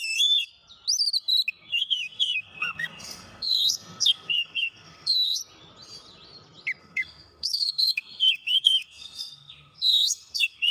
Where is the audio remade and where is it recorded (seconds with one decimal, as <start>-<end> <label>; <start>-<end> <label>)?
0.0-0.5 remade; 0.5-1.7 recorded; 1.7-5.4 remade; 5.4-6.8 recorded; 6.8-10.7 remade